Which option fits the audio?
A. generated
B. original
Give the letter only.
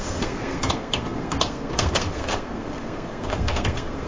A